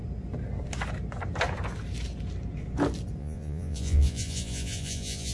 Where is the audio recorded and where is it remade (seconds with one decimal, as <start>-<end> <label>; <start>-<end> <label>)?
0.0-3.2 recorded; 3.2-5.3 remade